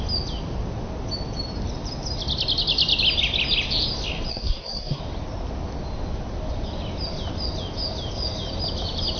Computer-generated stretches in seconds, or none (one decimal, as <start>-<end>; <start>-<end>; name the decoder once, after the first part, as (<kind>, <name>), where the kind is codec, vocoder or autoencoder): 4.3-5.0 (codec, SNAC)